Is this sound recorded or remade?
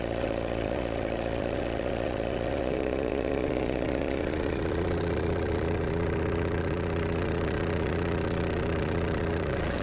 remade